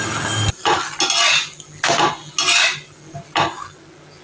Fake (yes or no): no